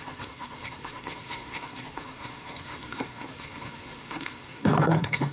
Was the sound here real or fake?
fake